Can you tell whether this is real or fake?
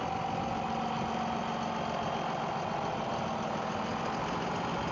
real